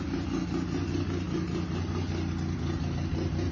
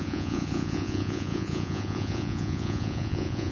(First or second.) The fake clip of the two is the second